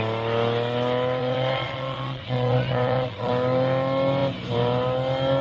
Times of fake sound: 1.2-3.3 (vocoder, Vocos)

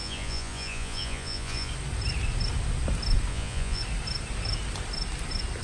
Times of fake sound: 0.0-1.7 (vocoder, Vocos); 3.3-3.8

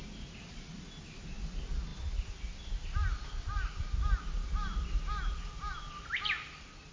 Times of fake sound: none

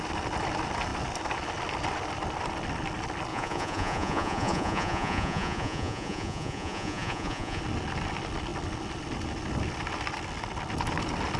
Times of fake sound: 3.3-7.6 (vocoder, Vocos)

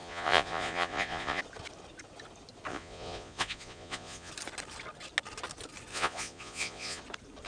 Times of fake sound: 0.0-1.4 (vocoder, Vocos); 2.7-4.3; 5.9-7.0